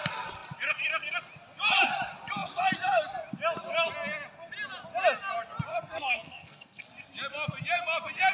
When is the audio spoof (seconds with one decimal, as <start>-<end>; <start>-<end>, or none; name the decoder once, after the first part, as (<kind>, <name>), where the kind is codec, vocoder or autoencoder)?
5.7-6.8 (codec, SNAC)

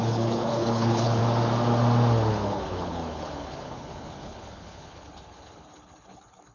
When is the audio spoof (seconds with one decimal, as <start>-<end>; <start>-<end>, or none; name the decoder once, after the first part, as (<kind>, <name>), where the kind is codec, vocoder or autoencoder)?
0.0-1.2 (codec, HILCodec); 2.3-6.5

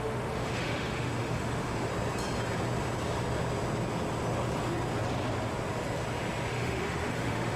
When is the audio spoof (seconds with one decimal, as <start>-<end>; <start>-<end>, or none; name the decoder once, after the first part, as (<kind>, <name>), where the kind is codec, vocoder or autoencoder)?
0.0-1.9 (autoencoder, DAC-VAE); 6.5-7.6

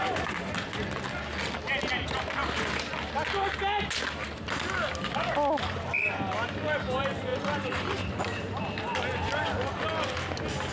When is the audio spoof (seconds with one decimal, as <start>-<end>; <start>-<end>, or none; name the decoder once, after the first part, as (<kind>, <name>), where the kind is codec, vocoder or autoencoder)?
7.3-8.5 (vocoder, BigVGAN v2)

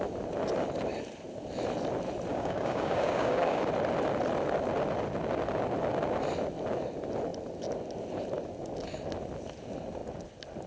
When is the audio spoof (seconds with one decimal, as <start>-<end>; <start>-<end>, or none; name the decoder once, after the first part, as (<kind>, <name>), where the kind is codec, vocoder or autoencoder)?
2.3-3.7 (codec, DAC)

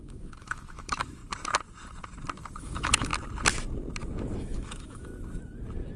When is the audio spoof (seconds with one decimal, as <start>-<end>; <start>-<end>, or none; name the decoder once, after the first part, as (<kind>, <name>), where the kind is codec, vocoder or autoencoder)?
0.0-1.2 (autoencoder, DAC-VAE); 2.6-3.1; 4.4-5.1

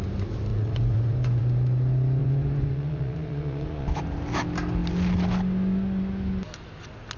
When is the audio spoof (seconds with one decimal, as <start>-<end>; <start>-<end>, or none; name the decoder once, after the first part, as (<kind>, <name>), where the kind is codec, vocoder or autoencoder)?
0.5-1.4 (vocoder, Vocos); 2.2-4.0

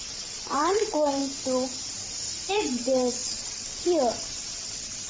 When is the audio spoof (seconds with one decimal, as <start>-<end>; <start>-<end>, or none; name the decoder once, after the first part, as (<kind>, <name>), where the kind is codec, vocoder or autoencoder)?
0.0-1.2 (vocoder, WaveNeXt); 2.5-5.1